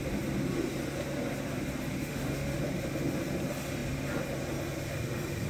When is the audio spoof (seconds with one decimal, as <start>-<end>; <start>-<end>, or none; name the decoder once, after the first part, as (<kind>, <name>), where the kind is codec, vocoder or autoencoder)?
2.0-2.6 (autoencoder, DAC-VAE)